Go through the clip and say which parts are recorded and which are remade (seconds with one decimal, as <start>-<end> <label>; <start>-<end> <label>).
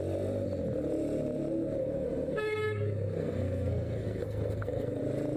0.0-1.8 recorded; 1.8-5.0 remade; 5.0-5.4 recorded